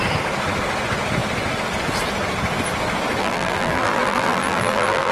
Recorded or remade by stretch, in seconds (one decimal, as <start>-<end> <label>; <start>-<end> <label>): 0.0-3.2 recorded; 3.2-5.1 remade